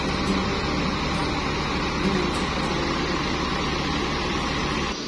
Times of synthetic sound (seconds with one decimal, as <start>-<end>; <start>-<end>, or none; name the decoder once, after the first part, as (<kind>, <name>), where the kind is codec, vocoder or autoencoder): none